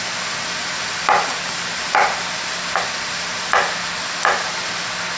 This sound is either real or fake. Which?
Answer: real